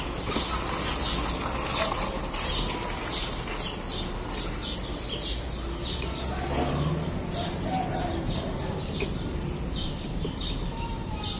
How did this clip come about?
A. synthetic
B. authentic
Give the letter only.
B